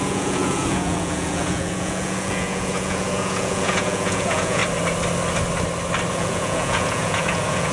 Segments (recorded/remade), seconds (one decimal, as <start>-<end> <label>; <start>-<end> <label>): 0.0-4.6 remade; 4.6-6.1 recorded; 6.1-7.7 remade

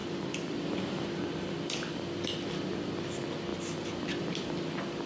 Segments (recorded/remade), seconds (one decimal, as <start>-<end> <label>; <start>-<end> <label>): 0.0-5.1 recorded

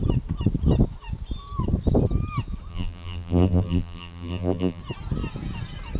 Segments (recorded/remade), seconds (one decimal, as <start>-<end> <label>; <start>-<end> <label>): 0.0-2.7 recorded; 2.7-4.8 remade; 4.8-6.0 recorded

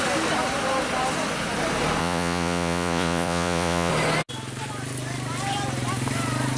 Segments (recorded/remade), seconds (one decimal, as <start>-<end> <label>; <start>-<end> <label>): 0.0-2.0 recorded; 2.0-3.9 remade; 3.9-6.6 recorded

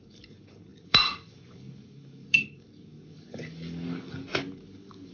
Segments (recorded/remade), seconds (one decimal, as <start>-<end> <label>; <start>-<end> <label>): 0.0-5.1 remade

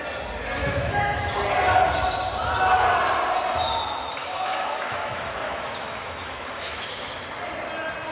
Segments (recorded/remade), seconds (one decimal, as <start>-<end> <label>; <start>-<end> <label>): 0.0-0.6 recorded; 0.6-1.3 remade; 1.3-4.2 recorded; 4.2-6.9 remade; 6.9-8.1 recorded

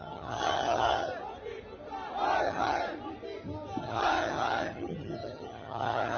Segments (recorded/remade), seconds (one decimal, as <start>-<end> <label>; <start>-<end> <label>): 0.0-1.1 remade; 1.1-2.4 recorded; 2.4-2.8 remade; 2.8-3.8 recorded; 3.8-6.2 remade

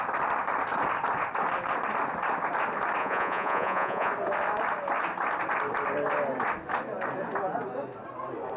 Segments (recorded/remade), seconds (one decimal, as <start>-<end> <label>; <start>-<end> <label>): 0.0-3.0 recorded; 3.0-4.1 remade; 4.1-8.6 recorded